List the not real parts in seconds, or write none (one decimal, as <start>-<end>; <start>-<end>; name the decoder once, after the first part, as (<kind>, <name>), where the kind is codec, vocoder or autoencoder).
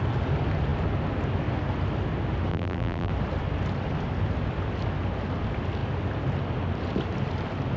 2.5-3.1 (vocoder, BigVGAN v2)